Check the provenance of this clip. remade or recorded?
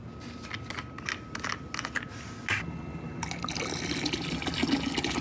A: recorded